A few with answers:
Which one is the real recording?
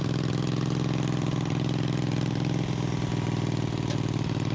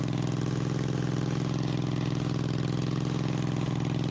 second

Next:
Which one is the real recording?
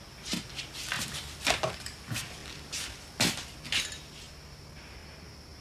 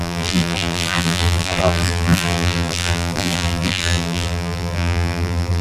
first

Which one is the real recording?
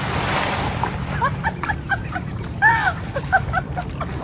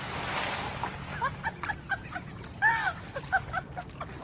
second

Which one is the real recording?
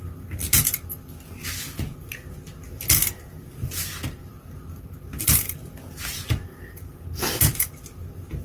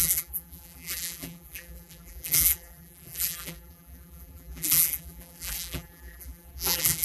first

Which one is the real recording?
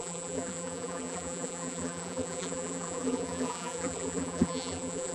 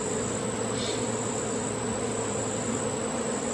second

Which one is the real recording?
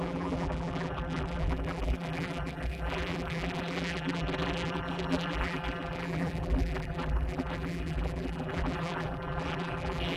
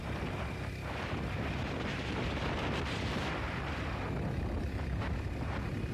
second